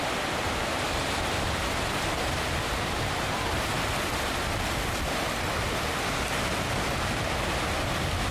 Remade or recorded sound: recorded